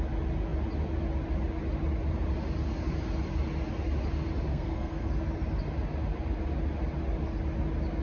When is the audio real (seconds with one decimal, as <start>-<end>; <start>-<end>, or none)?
0.0-4.5; 5.1-8.0

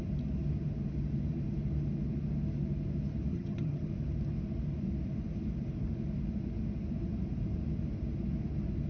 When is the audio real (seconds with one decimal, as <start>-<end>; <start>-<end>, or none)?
0.0-3.3; 3.9-8.9

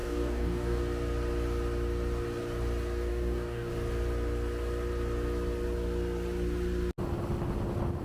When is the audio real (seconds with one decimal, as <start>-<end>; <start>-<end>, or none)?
0.8-3.1; 3.7-8.0

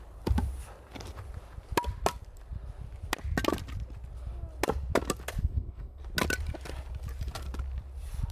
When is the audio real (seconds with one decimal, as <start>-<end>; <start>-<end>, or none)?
0.0-5.4; 6.0-8.3

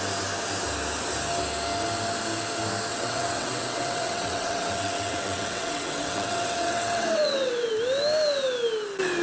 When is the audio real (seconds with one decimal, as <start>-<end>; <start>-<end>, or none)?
0.0-2.9; 7.7-9.2